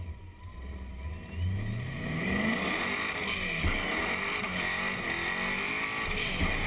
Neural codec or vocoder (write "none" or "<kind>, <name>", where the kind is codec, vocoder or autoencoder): none